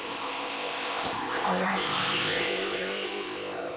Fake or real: fake